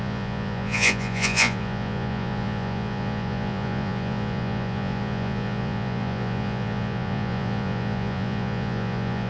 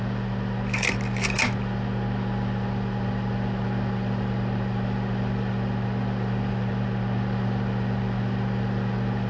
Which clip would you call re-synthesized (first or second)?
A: first